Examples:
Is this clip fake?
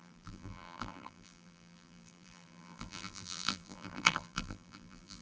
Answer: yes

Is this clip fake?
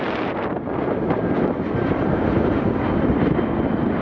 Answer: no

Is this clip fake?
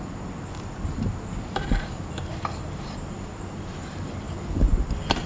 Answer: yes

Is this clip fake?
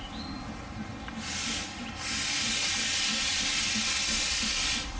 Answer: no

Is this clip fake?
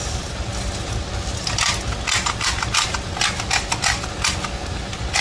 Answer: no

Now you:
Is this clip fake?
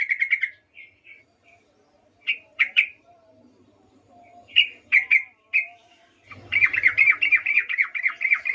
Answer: yes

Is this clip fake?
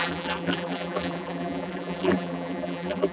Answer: yes